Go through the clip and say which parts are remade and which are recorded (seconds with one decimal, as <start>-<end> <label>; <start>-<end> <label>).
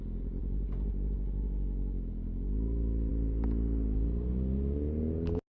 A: 0.0-5.5 recorded